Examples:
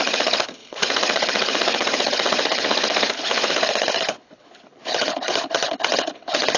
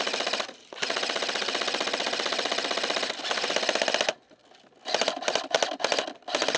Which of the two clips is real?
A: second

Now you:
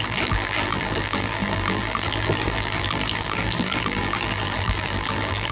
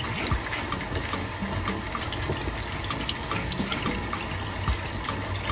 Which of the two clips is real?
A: second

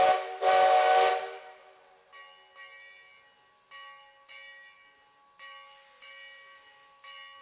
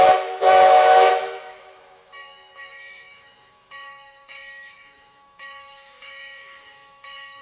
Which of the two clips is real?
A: first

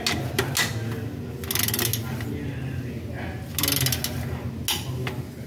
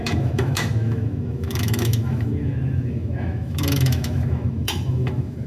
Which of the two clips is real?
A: first